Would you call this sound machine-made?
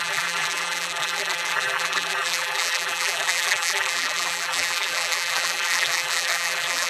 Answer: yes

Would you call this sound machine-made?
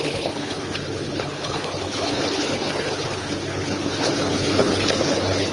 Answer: yes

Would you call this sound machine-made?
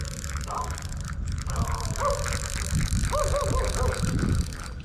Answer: no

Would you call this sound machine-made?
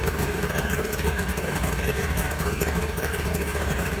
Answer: yes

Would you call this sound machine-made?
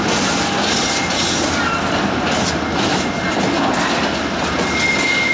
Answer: no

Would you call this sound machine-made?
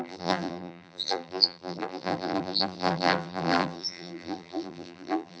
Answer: yes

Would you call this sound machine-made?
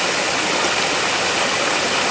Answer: no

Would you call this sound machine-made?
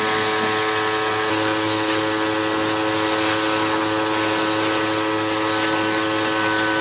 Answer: no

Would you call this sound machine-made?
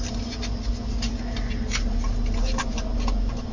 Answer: no